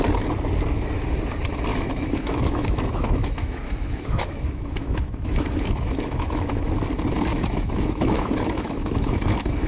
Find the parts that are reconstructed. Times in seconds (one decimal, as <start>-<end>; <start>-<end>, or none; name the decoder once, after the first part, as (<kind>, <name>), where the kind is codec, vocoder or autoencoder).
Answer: 1.7-6.7 (autoencoder, DAC-VAE); 7.3-9.7